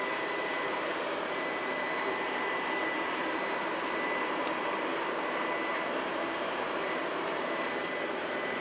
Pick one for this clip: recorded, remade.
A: remade